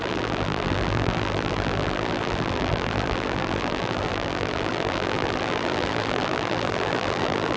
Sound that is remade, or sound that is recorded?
remade